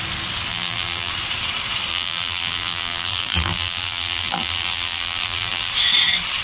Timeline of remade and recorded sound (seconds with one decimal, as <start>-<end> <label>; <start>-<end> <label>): 0.0-0.5 recorded; 0.5-1.1 remade; 1.1-1.9 recorded; 1.9-5.7 remade; 5.7-6.4 recorded